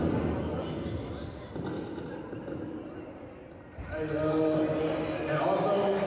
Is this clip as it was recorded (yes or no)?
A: yes